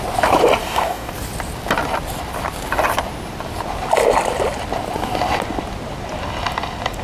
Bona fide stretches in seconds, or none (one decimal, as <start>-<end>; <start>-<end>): 0.0-0.6; 1.1-7.0